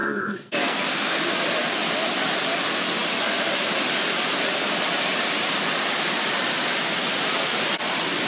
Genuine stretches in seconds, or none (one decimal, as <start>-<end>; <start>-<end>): 1.2-8.3